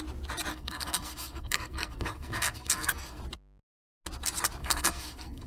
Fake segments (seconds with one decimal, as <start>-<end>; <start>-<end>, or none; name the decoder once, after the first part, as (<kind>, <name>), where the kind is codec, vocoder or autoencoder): 0.5-3.2 (codec, SNAC); 4.6-5.5